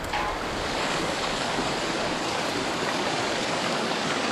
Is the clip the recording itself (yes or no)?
no